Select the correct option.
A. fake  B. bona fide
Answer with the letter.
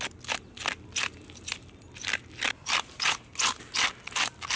B